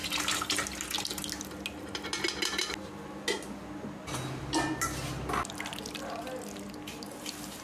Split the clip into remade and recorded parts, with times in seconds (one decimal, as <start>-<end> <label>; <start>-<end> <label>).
0.0-7.6 recorded

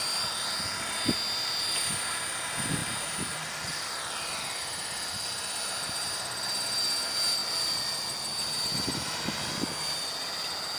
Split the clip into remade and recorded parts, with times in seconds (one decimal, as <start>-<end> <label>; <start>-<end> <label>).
0.0-2.8 recorded; 2.8-4.0 remade; 4.0-7.4 recorded; 7.4-8.6 remade; 8.6-10.8 recorded